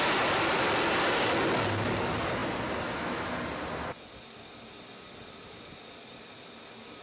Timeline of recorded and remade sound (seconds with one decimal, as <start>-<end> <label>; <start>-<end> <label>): 0.0-7.0 recorded